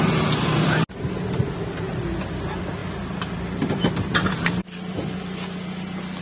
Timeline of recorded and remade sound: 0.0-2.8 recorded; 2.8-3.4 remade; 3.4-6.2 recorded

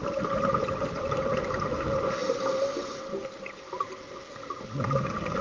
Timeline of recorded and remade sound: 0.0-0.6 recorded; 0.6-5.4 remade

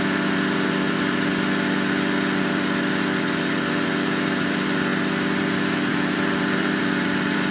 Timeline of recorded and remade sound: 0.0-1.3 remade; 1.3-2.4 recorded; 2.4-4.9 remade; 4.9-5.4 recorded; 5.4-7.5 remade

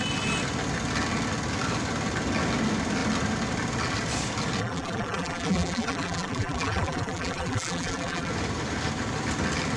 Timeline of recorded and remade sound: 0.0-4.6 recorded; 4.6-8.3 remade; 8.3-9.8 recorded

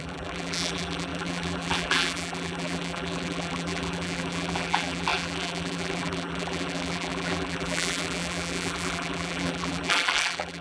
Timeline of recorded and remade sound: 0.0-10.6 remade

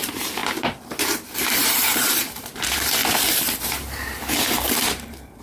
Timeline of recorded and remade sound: 0.0-3.0 remade; 3.0-3.6 recorded; 3.6-5.4 remade

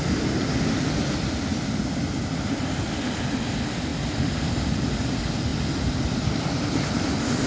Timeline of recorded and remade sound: 0.0-3.9 remade; 3.9-4.5 recorded; 4.5-7.5 remade